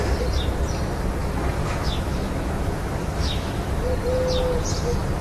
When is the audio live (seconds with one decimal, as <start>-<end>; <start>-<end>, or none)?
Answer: 0.0-1.2; 3.8-5.2